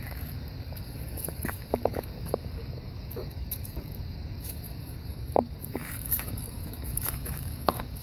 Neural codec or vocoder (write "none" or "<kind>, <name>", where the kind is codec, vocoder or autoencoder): codec, DAC